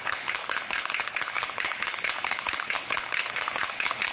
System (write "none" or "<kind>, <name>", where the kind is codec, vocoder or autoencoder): codec, HILCodec